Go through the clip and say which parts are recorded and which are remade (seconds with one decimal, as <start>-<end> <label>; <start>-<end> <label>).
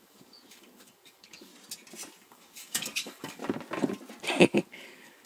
0.0-1.5 remade; 1.5-2.2 recorded; 2.2-3.4 remade; 3.4-4.4 recorded; 4.4-5.3 remade